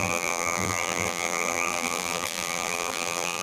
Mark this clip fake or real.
fake